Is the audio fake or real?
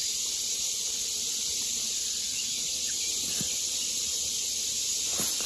real